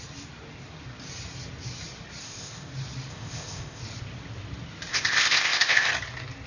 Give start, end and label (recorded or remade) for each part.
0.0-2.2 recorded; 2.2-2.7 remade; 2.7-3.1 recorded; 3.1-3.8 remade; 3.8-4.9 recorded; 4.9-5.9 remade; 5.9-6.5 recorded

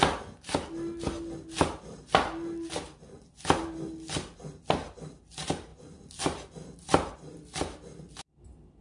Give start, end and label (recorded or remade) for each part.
0.0-8.8 recorded

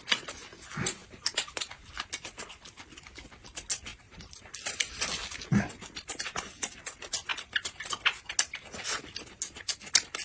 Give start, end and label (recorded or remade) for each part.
0.0-1.0 recorded; 1.0-1.9 remade; 1.9-3.9 recorded; 3.9-4.4 remade; 4.4-10.2 recorded

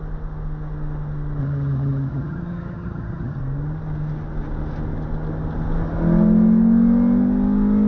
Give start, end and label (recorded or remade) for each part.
0.0-1.4 recorded; 1.4-3.4 remade; 3.4-7.9 recorded

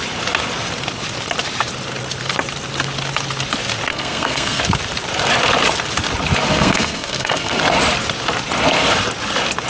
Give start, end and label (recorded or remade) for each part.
0.0-3.9 recorded; 3.9-4.6 remade; 4.6-6.5 recorded; 6.5-7.6 remade; 7.6-9.7 recorded

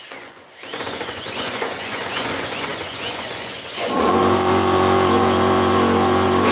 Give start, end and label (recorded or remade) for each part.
0.0-6.5 remade